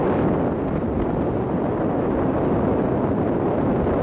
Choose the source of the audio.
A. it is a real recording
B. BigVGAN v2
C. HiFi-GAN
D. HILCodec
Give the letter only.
A